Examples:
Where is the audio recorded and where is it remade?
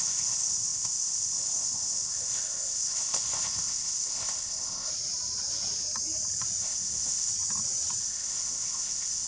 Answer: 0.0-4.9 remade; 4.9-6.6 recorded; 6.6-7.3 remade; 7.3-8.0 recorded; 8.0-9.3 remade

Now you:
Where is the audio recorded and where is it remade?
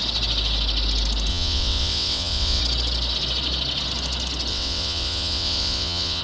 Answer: 0.0-1.3 recorded; 1.3-2.6 remade; 2.6-4.5 recorded; 4.5-6.2 remade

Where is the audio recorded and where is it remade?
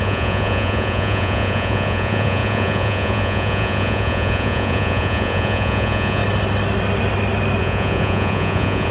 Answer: 0.0-6.2 remade; 6.2-7.6 recorded; 7.6-8.9 remade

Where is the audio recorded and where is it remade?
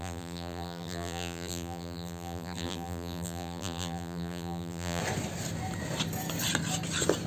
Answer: 0.0-5.0 remade; 5.0-7.3 recorded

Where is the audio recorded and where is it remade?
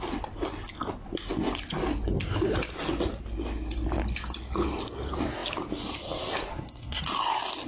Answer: 0.0-6.5 recorded; 6.5-7.0 remade; 7.0-7.7 recorded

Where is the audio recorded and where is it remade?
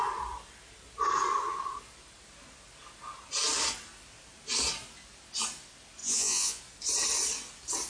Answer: 0.0-6.0 recorded; 6.0-6.6 remade; 6.6-7.9 recorded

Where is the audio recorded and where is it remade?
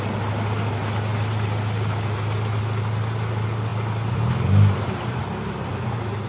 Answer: 0.0-6.3 recorded